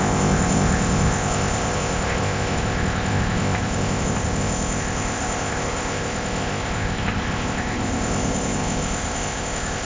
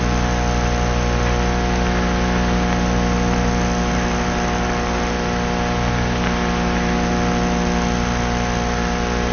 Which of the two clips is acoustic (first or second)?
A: second